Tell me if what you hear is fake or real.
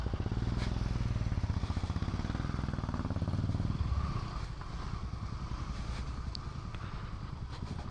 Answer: real